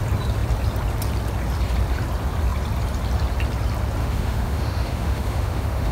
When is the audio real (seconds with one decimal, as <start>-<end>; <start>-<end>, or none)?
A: 0.0-4.0